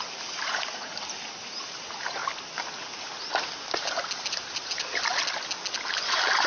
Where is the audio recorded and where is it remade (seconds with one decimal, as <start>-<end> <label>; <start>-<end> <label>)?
0.0-2.2 remade; 2.2-4.3 recorded; 4.3-5.1 remade; 5.1-5.9 recorded; 5.9-6.5 remade